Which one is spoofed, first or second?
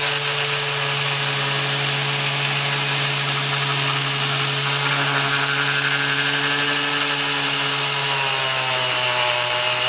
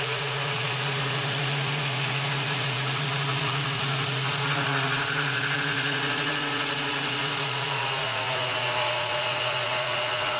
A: second